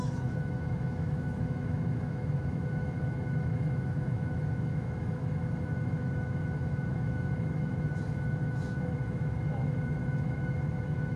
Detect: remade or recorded remade